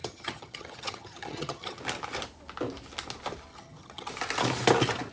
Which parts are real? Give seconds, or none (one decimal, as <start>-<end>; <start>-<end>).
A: 1.8-3.5; 4.1-5.1

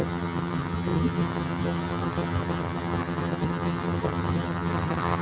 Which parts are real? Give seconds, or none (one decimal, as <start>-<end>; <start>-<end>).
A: none

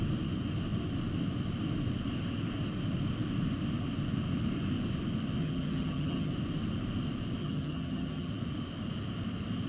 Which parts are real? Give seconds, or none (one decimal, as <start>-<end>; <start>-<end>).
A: 0.0-5.4; 6.3-7.4; 8.3-9.7

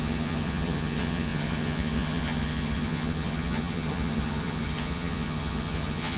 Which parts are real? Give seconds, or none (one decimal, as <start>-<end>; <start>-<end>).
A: none

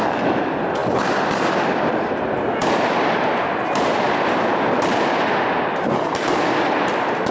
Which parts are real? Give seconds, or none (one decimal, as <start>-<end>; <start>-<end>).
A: 0.0-7.3

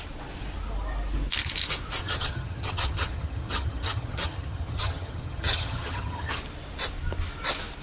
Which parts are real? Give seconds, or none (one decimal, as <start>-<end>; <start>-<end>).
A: 0.0-2.0; 6.4-7.8

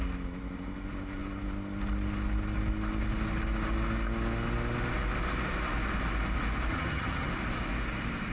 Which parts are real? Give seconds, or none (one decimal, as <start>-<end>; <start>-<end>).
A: 0.0-6.7; 7.3-8.3